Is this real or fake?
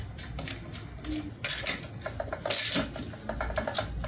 real